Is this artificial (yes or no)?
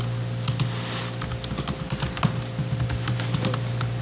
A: no